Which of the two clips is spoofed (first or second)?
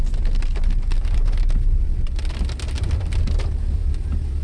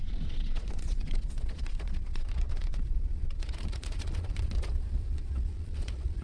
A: second